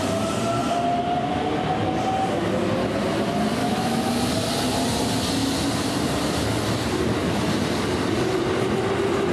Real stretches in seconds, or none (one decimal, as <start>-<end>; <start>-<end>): 0.0-3.6; 4.1-9.3